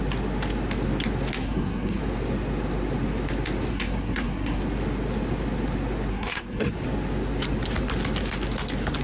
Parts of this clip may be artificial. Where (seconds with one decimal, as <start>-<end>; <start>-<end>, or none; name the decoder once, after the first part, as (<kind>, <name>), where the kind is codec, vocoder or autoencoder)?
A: 1.4-2.0 (codec, SNAC); 3.7-4.6; 6.1-6.7

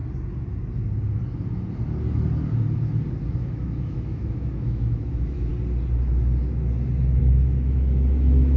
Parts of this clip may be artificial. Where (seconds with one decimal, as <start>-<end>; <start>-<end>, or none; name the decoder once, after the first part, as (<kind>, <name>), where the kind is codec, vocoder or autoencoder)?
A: 3.4-5.5 (autoencoder, DAC-VAE); 7.2-8.6

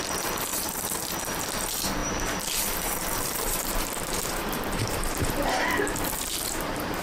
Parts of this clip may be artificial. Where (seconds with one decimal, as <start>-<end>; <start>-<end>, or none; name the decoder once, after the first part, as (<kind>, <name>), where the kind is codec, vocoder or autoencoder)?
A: 0.5-1.1 (vocoder, BigVGAN v2); 2.0-5.3

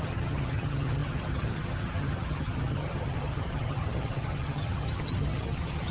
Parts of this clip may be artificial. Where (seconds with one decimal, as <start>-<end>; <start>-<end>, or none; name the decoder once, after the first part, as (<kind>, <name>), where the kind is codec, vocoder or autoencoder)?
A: 0.0-5.9 (vocoder, HiFi-GAN)

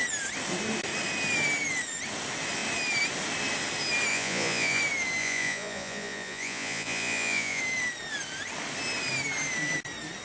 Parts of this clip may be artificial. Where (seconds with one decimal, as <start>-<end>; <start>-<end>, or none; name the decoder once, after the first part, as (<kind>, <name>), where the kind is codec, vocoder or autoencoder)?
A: 4.1-4.8 (vocoder, Vocos); 5.2-7.6

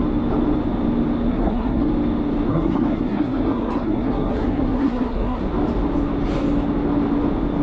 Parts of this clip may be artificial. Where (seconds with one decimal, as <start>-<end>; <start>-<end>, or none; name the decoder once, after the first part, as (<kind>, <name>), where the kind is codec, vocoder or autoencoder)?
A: 1.3-1.9 (codec, SNAC); 2.5-5.4

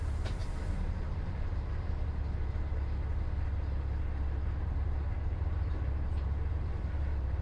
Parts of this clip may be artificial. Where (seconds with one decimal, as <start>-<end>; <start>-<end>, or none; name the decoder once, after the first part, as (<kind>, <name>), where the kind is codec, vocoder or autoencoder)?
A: 0.0-0.4 (vocoder, BigVGAN v2); 4.7-7.4